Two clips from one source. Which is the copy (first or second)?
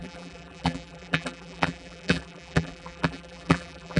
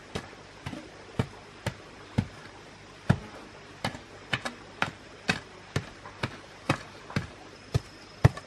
first